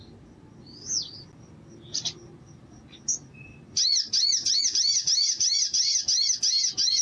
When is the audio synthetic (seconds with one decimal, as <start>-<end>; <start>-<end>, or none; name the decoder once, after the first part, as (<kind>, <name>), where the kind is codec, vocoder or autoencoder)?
none